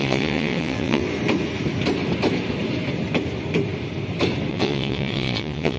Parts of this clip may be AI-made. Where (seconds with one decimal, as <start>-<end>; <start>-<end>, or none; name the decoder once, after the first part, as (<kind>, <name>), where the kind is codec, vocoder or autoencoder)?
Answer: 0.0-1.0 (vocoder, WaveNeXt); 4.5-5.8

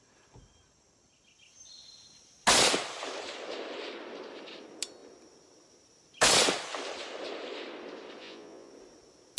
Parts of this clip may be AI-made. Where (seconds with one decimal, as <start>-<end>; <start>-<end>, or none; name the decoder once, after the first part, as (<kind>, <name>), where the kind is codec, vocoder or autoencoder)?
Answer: 8.2-8.7 (vocoder, Vocos)

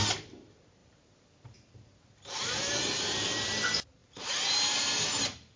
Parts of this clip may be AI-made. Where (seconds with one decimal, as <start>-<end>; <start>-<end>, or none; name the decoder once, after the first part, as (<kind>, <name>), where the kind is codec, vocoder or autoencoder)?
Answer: 0.8-2.6 (vocoder, BigVGAN v2); 4.0-4.8

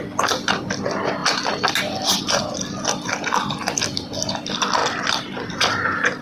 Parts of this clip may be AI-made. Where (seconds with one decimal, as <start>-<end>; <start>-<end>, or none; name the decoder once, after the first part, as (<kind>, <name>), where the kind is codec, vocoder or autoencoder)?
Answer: none